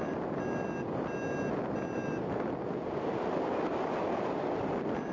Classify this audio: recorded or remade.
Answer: recorded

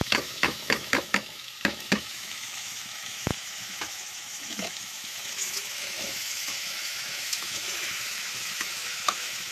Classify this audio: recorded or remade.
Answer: remade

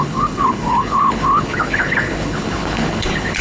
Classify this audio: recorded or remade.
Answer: remade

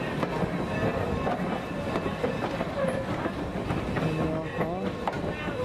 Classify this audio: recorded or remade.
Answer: recorded